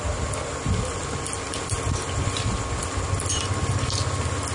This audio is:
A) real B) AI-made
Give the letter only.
A